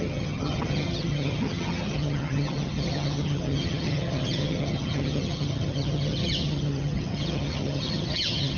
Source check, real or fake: fake